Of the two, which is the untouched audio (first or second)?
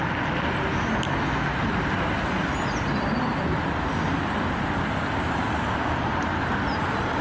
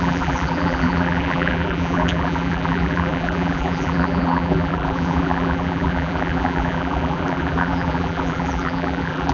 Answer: first